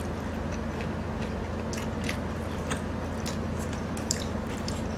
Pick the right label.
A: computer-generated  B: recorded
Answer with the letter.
B